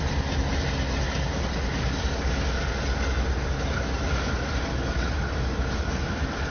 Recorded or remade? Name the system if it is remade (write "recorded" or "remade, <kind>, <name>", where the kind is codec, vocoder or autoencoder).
recorded